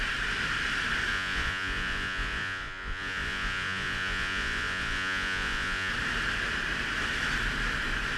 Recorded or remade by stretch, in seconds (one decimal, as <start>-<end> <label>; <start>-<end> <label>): 0.0-1.1 recorded; 1.1-5.9 remade; 5.9-8.2 recorded